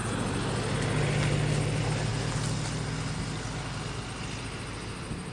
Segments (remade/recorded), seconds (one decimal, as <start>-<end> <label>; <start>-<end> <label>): 0.0-5.3 recorded